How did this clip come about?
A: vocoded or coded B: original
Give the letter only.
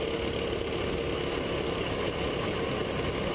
B